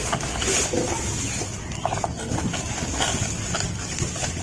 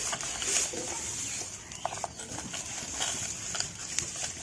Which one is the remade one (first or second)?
second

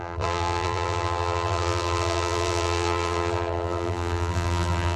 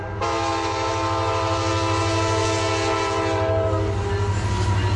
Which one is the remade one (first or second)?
first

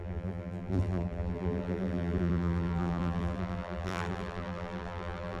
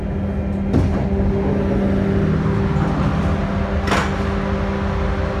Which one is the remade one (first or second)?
first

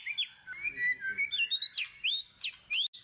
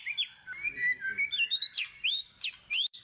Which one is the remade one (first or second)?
second